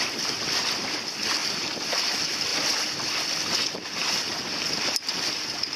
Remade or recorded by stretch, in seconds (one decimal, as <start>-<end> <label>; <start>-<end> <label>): 0.0-1.4 recorded; 1.4-2.0 remade; 2.0-2.5 recorded; 2.5-3.6 remade; 3.6-4.0 recorded; 4.0-5.8 remade